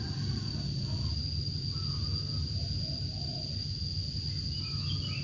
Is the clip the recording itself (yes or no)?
yes